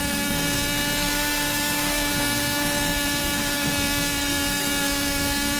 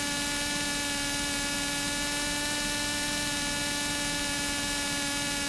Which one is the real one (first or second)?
second